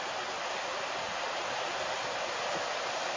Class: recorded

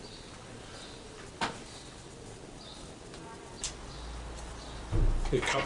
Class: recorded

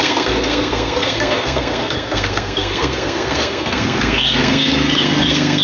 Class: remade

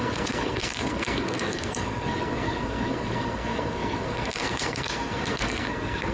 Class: remade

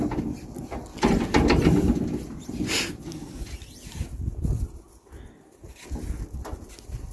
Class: recorded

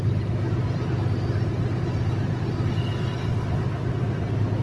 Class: recorded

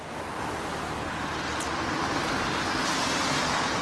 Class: recorded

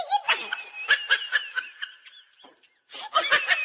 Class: recorded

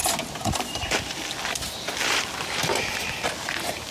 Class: recorded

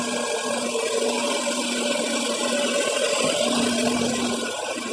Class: recorded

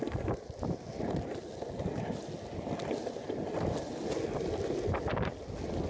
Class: recorded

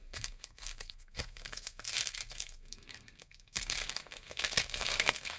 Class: remade